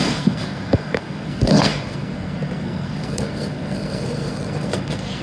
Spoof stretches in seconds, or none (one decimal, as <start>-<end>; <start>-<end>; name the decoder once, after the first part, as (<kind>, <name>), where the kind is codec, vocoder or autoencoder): 0.0-5.2 (codec, SNAC)